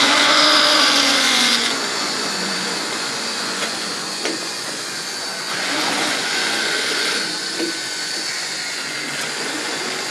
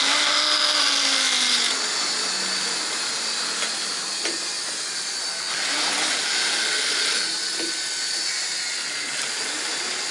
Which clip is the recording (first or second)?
second